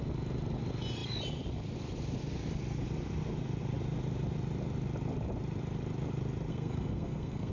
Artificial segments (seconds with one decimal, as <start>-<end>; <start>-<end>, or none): 6.5-7.5